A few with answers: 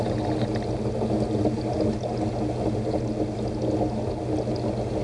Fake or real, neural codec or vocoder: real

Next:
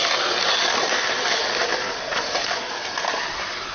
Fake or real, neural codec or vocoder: real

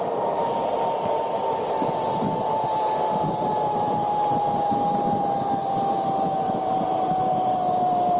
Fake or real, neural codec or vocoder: fake, vocoder, BigVGAN v2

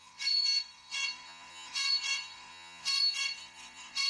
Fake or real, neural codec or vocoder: fake, vocoder, Vocos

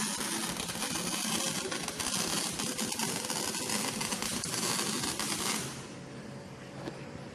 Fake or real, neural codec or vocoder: real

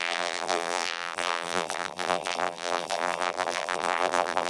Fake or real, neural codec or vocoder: fake, vocoder, BigVGAN v2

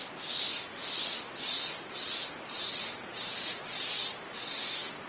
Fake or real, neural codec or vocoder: real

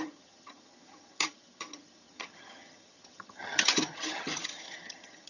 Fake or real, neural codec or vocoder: fake, vocoder, HiFi-GAN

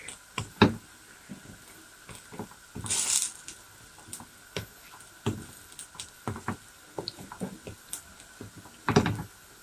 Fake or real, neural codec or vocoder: real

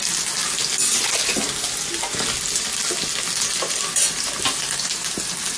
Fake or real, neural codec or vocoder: real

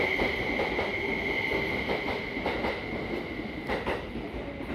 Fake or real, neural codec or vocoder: real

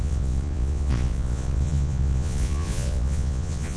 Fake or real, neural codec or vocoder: fake, vocoder, Vocos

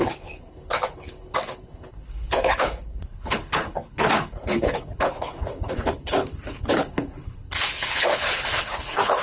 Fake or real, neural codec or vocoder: fake, codec, HILCodec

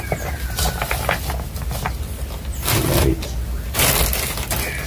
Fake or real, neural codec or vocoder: real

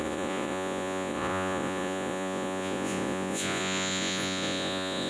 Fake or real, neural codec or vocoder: fake, vocoder, Vocos